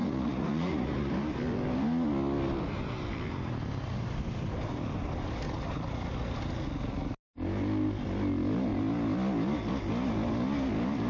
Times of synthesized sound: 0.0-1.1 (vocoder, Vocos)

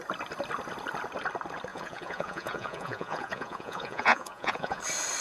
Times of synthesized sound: 1.7-4.8 (vocoder, Vocos)